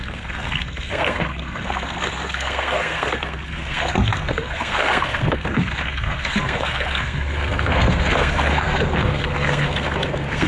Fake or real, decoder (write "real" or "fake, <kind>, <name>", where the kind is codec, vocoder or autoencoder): fake, codec, SNAC